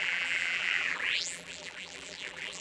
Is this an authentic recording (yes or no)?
no